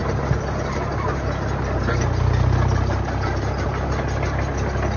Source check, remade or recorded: recorded